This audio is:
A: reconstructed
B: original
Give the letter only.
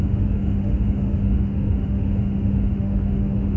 A